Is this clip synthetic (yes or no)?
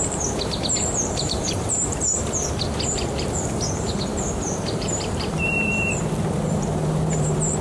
yes